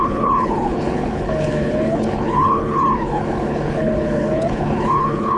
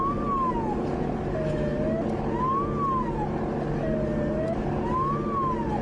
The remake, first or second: first